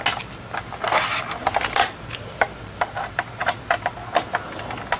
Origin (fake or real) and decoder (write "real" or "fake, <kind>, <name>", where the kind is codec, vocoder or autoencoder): real